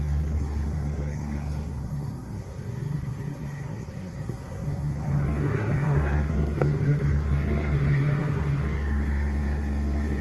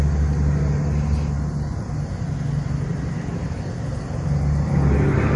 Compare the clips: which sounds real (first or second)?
second